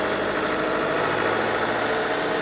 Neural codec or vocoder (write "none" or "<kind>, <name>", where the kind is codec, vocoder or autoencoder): none